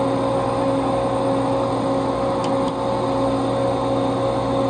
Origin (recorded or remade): recorded